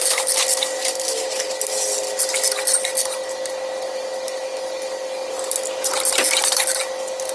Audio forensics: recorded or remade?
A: recorded